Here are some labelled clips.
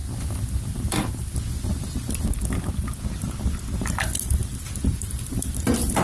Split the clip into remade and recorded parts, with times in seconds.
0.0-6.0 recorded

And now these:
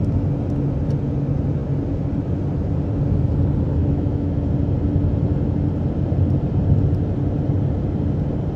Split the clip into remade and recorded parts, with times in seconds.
0.0-3.8 recorded; 3.8-4.5 remade; 4.5-8.6 recorded

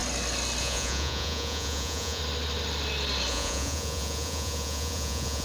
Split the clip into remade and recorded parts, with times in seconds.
0.0-0.6 recorded; 0.6-2.2 remade; 2.2-3.3 recorded; 3.3-5.4 remade

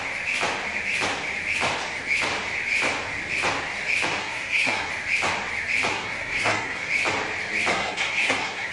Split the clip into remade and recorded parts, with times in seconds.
0.0-4.2 recorded; 4.2-4.9 remade; 4.9-5.9 recorded; 5.9-6.9 remade; 6.9-7.7 recorded; 7.7-8.7 remade